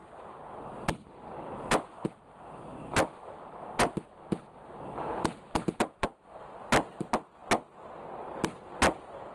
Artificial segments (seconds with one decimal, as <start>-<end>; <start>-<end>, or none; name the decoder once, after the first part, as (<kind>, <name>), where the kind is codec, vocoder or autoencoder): none